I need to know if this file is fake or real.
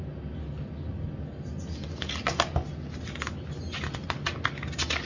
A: real